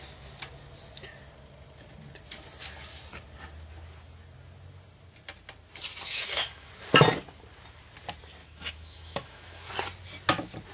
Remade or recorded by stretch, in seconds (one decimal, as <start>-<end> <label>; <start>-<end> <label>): 0.0-6.1 recorded; 6.1-6.7 remade; 6.7-8.4 recorded; 8.4-9.7 remade; 9.7-10.7 recorded